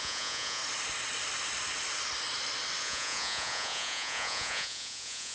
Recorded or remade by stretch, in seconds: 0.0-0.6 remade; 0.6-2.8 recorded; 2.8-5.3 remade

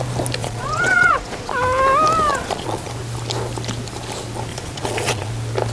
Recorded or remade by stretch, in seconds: 0.0-0.4 recorded; 0.4-1.5 remade; 1.5-2.3 recorded; 2.3-2.9 remade; 2.9-4.5 recorded; 4.5-5.3 remade; 5.3-5.7 recorded

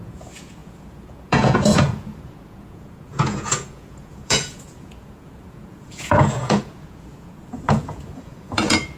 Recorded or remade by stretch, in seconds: 0.0-9.0 remade

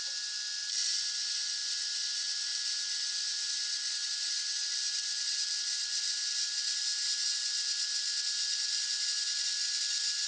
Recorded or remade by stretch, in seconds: 0.0-10.3 recorded

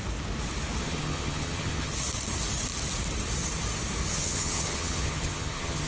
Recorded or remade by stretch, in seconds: 0.0-0.8 recorded; 0.8-1.9 remade; 1.9-4.1 recorded; 4.1-5.9 remade

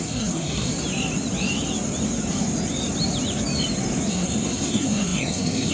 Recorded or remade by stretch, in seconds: 0.0-0.7 remade; 0.7-4.1 recorded; 4.1-5.7 remade

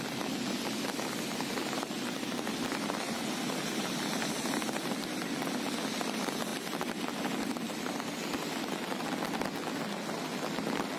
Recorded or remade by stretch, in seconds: 0.0-11.0 recorded

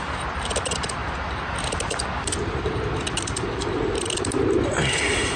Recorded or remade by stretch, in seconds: 0.0-5.4 remade